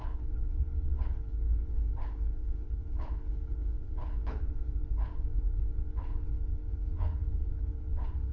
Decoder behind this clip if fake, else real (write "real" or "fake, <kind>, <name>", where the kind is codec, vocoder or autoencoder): fake, codec, HILCodec